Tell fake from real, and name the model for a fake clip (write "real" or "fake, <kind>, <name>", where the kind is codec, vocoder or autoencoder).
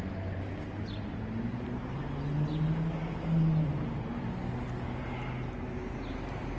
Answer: real